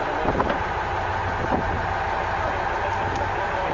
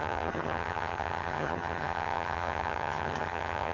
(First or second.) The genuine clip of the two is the first